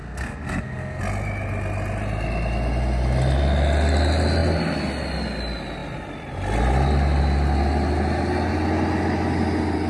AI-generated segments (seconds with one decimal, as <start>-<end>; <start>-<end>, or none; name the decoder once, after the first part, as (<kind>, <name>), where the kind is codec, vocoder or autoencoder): 0.0-1.0 (codec, SNAC)